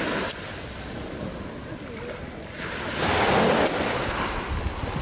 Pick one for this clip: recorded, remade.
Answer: recorded